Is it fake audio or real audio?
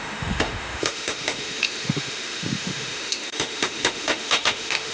fake